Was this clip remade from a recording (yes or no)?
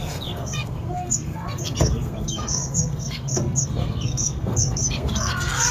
yes